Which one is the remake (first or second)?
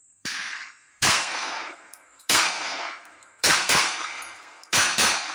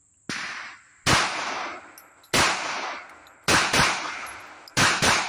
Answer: first